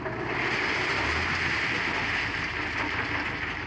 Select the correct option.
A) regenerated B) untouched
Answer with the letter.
B